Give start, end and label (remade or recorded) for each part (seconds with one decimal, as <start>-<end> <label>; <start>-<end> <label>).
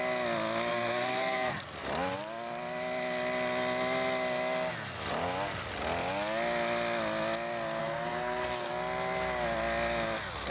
0.0-0.7 recorded; 0.7-1.5 remade; 1.5-7.8 recorded; 7.8-8.7 remade; 8.7-10.5 recorded